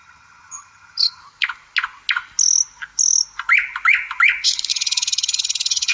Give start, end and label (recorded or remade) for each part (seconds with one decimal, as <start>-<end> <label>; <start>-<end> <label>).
0.0-1.2 remade; 1.2-4.7 recorded; 4.7-5.9 remade